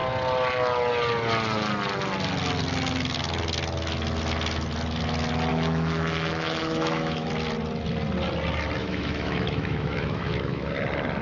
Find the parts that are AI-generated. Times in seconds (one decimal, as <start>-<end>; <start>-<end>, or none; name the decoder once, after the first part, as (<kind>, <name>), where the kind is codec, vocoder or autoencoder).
5.5-7.3 (autoencoder, DAC-VAE); 8.8-10.7